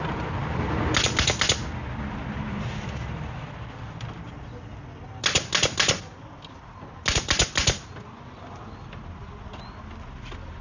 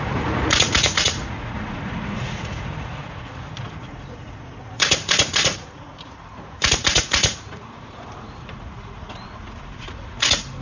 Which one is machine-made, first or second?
second